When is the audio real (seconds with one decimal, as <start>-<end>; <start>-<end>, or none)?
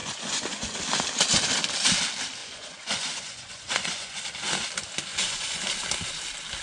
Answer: 0.8-2.4; 4.2-5.1; 5.6-6.6